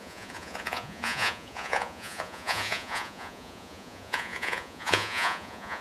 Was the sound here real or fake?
fake